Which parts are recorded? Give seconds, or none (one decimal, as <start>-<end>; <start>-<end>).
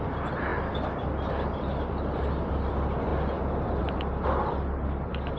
0.0-5.4